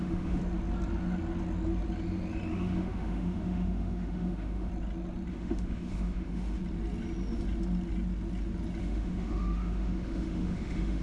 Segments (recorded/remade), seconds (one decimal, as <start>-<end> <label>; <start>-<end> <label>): 0.0-0.4 remade; 0.4-2.5 recorded; 2.5-4.7 remade; 4.7-5.3 recorded; 5.3-6.6 remade; 6.6-8.8 recorded; 8.8-11.0 remade